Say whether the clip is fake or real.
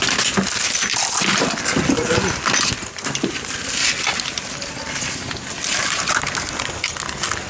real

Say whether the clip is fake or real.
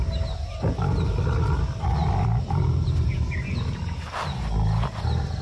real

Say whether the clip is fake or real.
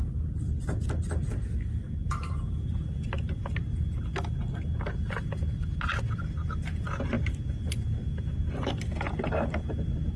real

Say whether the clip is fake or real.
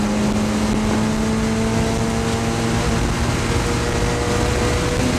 real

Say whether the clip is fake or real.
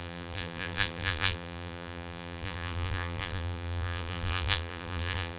fake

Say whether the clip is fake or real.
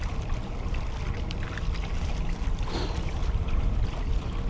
real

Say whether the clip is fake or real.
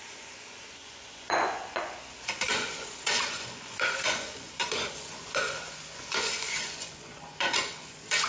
fake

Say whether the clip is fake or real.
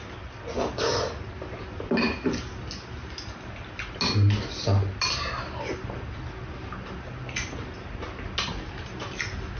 real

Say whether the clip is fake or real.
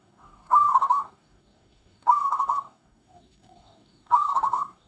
fake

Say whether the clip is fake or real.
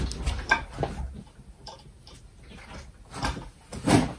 real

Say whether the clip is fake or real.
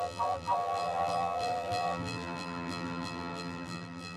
fake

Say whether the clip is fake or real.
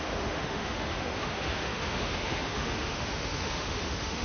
fake